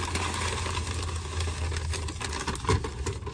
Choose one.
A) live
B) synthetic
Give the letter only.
A